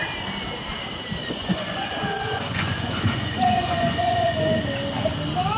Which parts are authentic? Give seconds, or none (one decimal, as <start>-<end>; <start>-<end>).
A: 0.0-1.2; 4.6-5.6